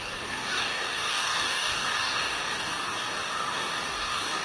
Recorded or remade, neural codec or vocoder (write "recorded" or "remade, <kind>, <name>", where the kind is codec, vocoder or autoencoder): remade, codec, DAC